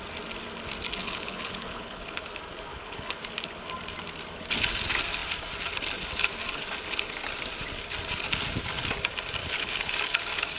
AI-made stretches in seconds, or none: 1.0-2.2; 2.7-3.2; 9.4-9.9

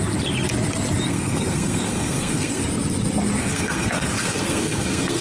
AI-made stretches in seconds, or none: 1.1-2.6; 3.4-5.2

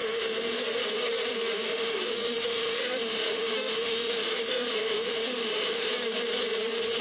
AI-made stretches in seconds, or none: 0.0-0.6; 1.7-5.9